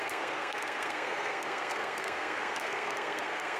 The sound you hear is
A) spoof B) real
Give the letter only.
A